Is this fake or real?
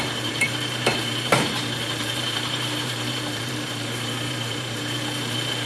fake